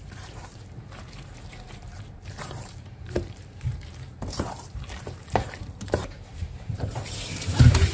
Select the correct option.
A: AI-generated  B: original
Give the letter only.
A